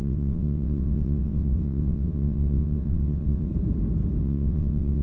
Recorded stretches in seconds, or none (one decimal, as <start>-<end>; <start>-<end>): 3.5-4.2